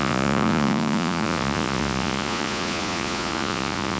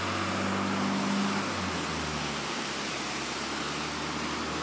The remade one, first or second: first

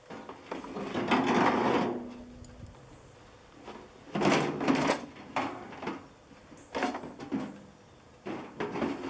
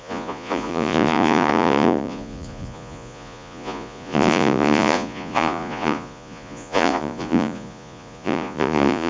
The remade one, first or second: second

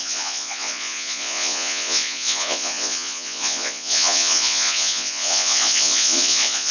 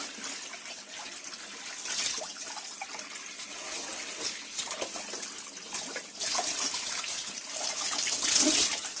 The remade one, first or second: first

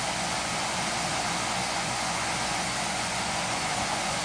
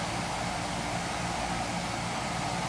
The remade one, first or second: first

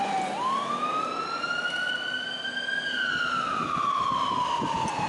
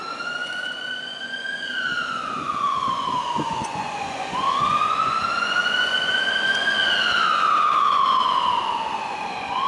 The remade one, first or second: second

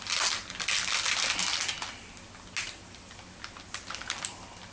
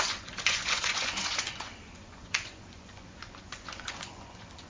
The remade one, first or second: second